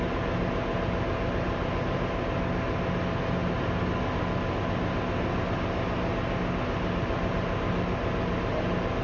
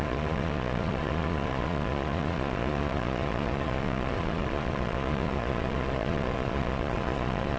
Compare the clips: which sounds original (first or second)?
first